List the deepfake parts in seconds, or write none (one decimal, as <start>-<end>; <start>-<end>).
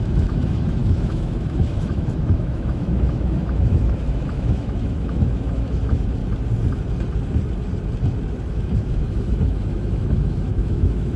0.0-6.2; 8.5-11.2